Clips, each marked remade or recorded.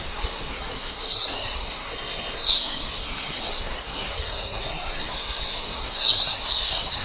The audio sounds remade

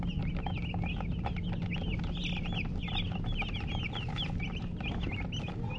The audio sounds recorded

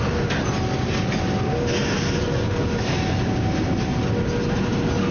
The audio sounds recorded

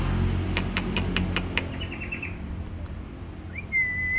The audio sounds recorded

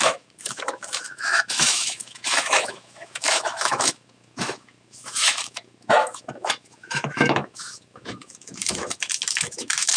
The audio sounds remade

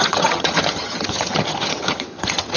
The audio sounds remade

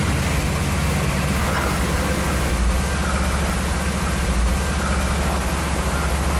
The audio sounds recorded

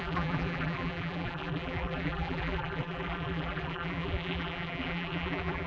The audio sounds remade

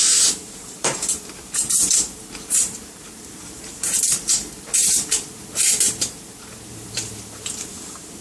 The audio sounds remade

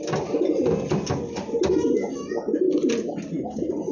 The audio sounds recorded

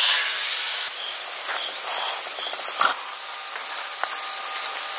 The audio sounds recorded